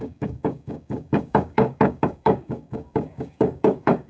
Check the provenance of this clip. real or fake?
fake